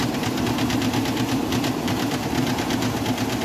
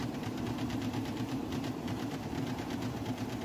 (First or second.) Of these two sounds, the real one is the first